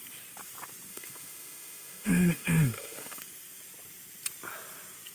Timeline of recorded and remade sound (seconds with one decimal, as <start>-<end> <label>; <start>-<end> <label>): 0.0-0.9 recorded; 0.9-3.2 remade; 3.2-5.1 recorded